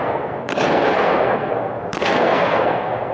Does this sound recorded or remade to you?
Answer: remade